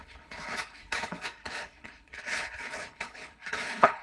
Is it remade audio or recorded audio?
remade